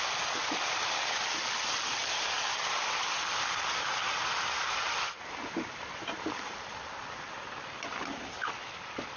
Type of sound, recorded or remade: recorded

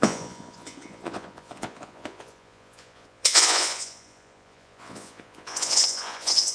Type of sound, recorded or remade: remade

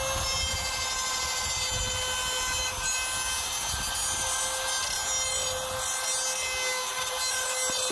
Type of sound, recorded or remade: recorded